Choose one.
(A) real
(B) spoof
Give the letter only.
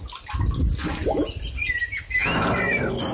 A